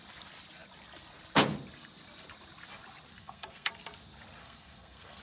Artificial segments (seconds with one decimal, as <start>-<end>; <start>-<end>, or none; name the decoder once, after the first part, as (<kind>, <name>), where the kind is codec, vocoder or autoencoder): 3.2-3.7 (codec, SNAC); 4.4-5.2